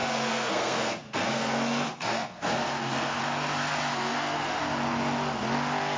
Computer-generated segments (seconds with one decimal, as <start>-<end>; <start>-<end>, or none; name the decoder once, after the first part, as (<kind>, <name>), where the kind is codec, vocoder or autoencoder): 0.0-3.2 (codec, SNAC); 3.9-4.6